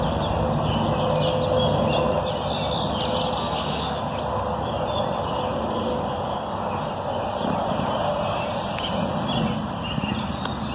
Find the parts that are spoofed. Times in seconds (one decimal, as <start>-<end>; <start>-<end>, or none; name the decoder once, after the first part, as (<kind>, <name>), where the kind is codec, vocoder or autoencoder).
3.4-4.0 (codec, SNAC)